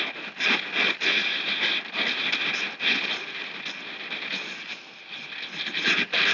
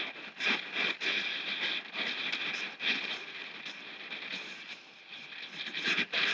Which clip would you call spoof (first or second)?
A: second